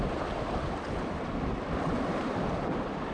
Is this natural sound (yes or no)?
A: no